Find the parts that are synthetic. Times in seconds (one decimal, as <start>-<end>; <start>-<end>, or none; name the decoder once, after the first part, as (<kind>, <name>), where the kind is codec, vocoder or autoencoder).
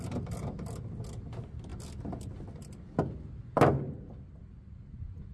none